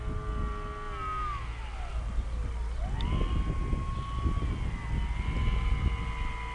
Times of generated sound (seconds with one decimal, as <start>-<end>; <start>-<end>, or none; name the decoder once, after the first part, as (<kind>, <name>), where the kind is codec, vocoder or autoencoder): none